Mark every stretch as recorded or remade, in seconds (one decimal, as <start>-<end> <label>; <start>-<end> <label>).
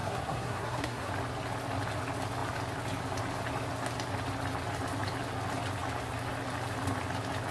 0.0-1.1 remade; 1.1-7.5 recorded